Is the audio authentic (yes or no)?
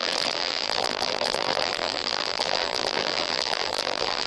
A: no